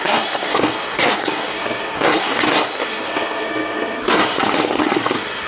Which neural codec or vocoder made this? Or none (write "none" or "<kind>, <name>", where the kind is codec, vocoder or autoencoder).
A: codec, SNAC